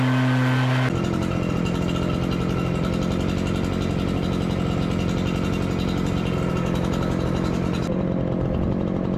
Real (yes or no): yes